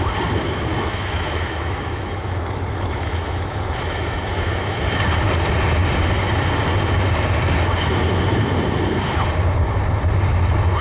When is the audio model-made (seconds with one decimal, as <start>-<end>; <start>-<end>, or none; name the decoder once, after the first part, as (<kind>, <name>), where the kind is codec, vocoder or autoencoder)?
0.7-5.0 (autoencoder, DAC-VAE)